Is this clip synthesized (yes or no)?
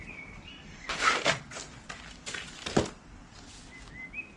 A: no